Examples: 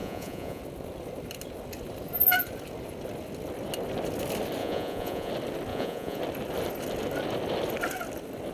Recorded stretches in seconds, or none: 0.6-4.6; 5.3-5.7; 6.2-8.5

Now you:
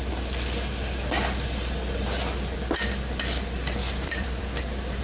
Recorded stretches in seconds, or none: 0.0-3.8; 4.4-5.0